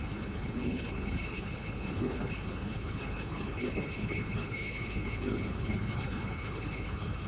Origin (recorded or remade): remade